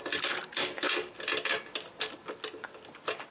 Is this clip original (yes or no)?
yes